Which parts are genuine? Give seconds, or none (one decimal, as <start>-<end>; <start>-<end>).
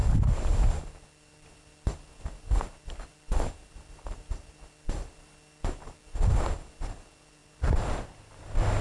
0.0-7.4; 8.3-8.8